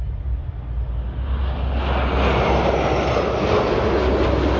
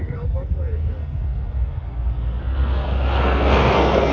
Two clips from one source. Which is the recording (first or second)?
first